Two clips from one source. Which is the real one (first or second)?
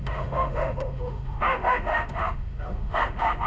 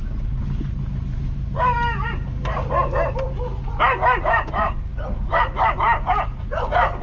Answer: second